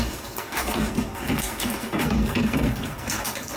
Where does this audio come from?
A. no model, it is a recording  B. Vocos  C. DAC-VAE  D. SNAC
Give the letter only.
D